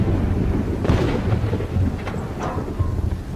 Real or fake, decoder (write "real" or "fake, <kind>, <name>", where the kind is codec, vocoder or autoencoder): real